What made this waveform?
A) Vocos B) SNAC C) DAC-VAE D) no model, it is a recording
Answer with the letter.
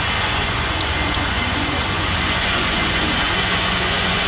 A